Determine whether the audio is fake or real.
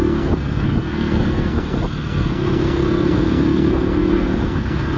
fake